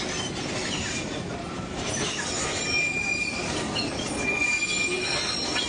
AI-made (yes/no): no